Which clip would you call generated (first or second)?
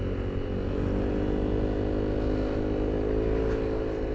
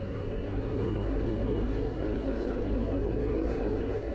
second